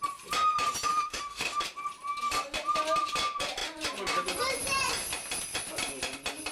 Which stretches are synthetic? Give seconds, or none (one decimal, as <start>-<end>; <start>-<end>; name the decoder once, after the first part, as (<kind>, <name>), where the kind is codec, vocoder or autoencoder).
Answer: 0.9-1.6 (autoencoder, DAC-VAE)